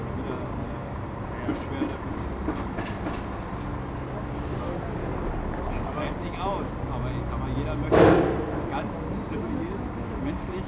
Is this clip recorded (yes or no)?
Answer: yes